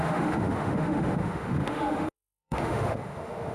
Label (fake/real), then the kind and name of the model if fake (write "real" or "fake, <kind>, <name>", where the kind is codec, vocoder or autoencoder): fake, autoencoder, DAC-VAE